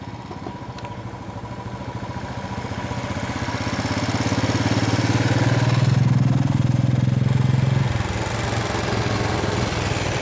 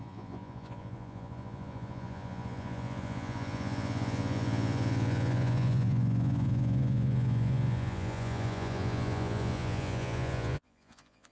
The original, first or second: first